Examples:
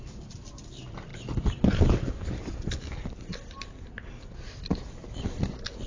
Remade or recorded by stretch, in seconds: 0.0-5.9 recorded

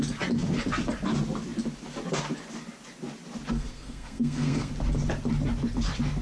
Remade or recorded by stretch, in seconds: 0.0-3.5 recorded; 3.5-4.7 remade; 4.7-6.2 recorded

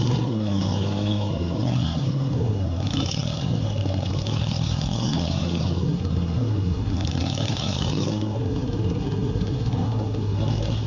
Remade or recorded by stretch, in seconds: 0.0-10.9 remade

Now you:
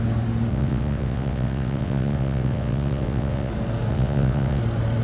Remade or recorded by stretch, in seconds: 0.0-0.5 recorded; 0.5-3.5 remade; 3.5-3.9 recorded; 3.9-4.6 remade; 4.6-5.0 recorded

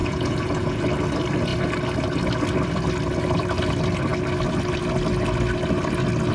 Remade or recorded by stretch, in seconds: 0.0-0.8 remade; 0.8-6.3 recorded

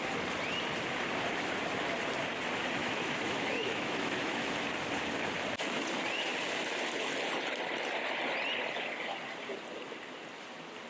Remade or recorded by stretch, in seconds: 0.0-2.8 recorded; 2.8-4.5 remade; 4.5-10.9 recorded

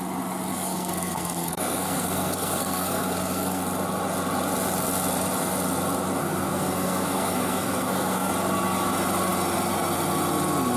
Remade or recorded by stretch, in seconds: 0.0-0.5 recorded; 0.5-3.6 remade; 3.6-6.2 recorded; 6.2-8.3 remade; 8.3-10.8 recorded

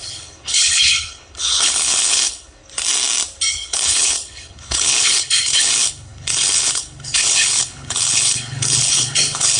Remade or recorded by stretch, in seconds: 0.0-2.6 remade; 2.6-3.5 recorded; 3.5-9.6 remade